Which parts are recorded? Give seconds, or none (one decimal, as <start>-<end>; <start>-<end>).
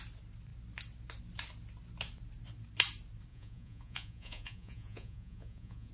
0.0-3.3